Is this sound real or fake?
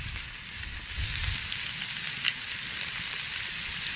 real